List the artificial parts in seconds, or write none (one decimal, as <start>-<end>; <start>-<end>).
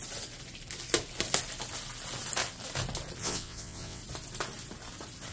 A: 3.2-4.0